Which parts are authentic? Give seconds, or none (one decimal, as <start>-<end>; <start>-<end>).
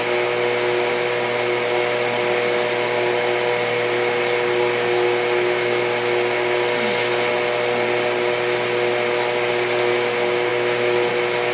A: 0.0-11.5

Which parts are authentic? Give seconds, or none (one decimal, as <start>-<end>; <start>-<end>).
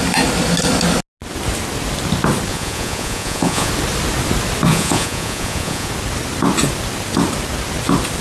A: 0.0-2.5; 3.7-4.7; 5.9-8.2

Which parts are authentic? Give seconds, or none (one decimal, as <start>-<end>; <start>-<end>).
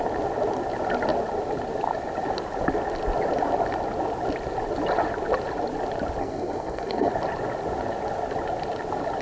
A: 0.0-6.2; 7.1-9.2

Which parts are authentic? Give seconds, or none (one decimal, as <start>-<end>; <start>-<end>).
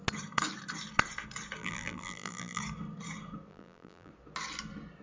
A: 0.0-1.6; 2.6-3.5; 4.1-5.0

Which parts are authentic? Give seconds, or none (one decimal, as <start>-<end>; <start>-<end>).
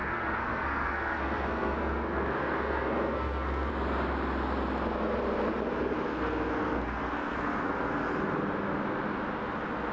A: 3.7-6.1; 8.1-9.9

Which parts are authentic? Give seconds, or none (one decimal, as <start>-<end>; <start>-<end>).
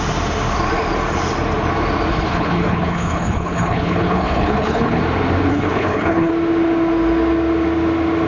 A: 0.0-2.1; 5.0-5.5; 6.3-8.3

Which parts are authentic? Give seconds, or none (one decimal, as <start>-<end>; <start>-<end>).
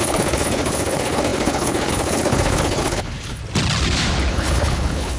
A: 3.4-4.3